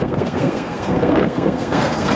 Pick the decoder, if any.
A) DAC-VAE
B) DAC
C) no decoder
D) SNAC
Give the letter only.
D